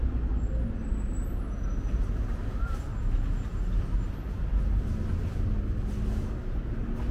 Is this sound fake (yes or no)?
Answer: no